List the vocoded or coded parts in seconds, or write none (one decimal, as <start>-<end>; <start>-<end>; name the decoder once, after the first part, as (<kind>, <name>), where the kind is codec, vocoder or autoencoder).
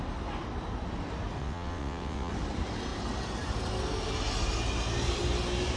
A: 1.4-2.3 (vocoder, WaveNeXt)